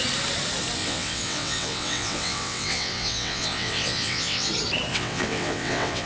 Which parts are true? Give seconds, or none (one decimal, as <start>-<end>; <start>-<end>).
0.0-0.8; 4.5-4.9